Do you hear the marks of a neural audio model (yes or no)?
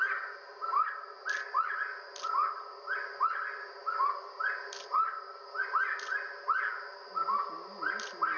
no